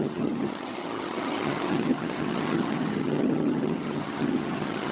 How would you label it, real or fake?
fake